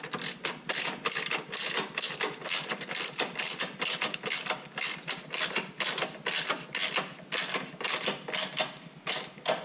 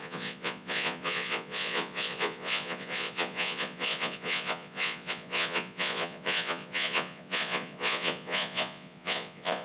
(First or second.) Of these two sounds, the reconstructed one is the second